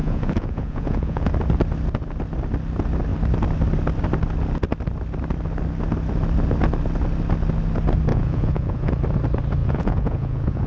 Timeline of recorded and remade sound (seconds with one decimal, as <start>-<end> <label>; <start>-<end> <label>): 0.0-1.3 remade; 1.3-8.1 recorded; 8.1-8.9 remade; 8.9-9.6 recorded; 9.6-10.7 remade